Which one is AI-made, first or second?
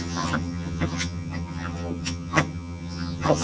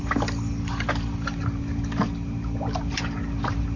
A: first